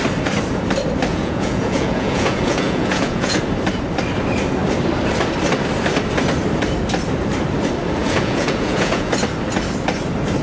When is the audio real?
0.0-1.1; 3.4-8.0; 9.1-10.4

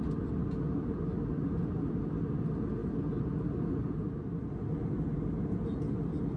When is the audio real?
0.0-6.4